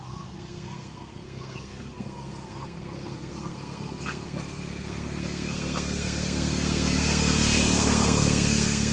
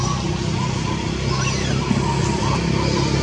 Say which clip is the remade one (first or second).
first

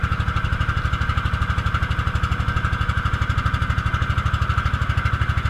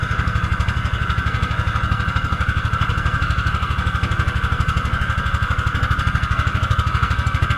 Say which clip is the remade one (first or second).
second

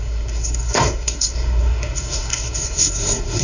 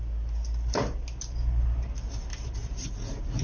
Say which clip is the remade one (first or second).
first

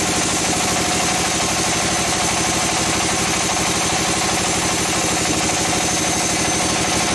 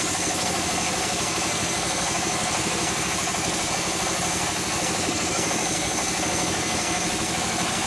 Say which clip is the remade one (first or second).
second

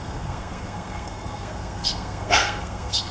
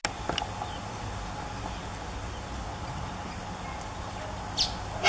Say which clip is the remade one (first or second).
first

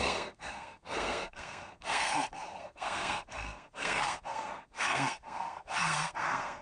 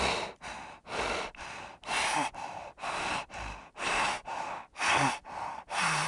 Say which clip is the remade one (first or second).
first